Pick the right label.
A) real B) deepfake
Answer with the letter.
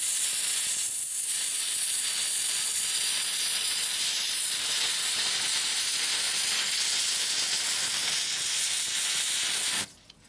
A